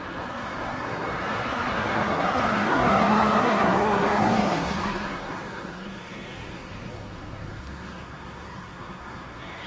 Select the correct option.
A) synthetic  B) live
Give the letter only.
A